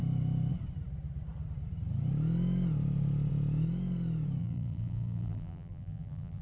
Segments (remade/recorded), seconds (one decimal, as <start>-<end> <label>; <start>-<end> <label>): 0.0-4.4 recorded; 4.4-6.4 remade